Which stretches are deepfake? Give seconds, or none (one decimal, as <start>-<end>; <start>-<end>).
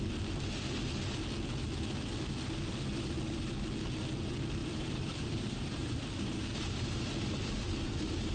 4.6-7.0